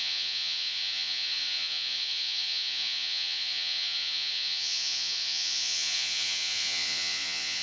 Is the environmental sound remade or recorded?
remade